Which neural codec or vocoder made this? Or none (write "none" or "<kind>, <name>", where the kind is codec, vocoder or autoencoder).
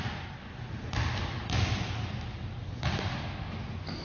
none